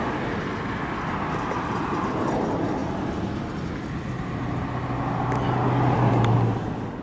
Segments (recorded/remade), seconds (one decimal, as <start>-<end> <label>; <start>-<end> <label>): 0.0-7.0 recorded